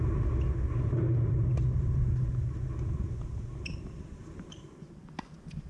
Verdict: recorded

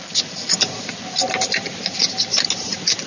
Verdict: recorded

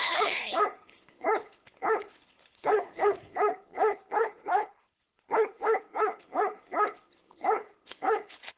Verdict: remade